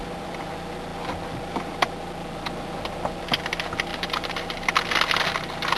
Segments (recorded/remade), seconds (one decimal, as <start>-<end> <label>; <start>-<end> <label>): 0.0-3.9 recorded; 3.9-4.7 remade; 4.7-5.8 recorded